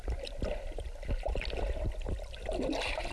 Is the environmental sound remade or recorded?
recorded